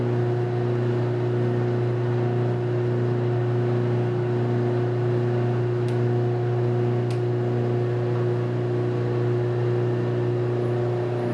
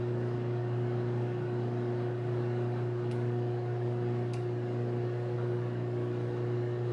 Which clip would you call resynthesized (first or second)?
second